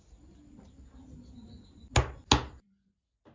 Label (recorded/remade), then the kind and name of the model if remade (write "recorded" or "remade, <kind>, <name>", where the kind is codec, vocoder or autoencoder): recorded